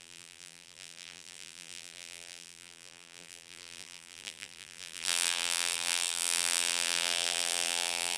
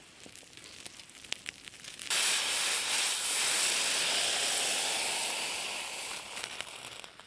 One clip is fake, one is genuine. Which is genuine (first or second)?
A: second